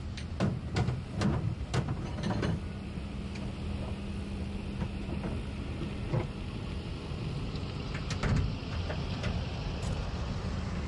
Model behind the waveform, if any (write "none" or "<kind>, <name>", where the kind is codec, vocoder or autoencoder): none